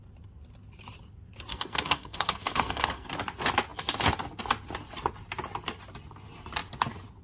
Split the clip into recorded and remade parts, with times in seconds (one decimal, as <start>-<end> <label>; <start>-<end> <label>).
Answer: 0.0-1.5 recorded; 1.5-3.1 remade; 3.1-7.2 recorded